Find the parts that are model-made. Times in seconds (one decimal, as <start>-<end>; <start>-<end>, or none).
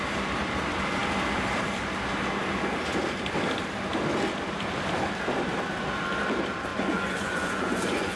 6.7-8.2